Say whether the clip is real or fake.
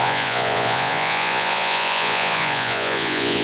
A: fake